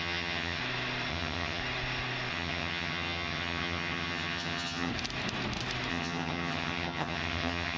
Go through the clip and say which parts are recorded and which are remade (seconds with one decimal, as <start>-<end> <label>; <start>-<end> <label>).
0.0-0.6 remade; 0.6-1.1 recorded; 1.1-1.6 remade; 1.6-2.3 recorded; 2.3-4.9 remade; 4.9-5.9 recorded; 5.9-7.8 remade